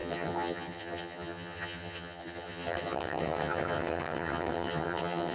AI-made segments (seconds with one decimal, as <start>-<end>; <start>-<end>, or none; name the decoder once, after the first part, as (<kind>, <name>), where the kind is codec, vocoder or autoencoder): 0.0-5.3 (vocoder, HiFi-GAN)